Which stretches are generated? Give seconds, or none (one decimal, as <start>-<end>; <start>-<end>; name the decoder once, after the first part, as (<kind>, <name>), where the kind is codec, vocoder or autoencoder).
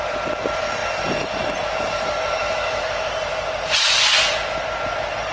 2.4-3.1 (autoencoder, DAC-VAE)